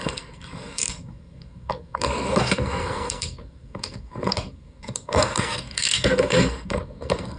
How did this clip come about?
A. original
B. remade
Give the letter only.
B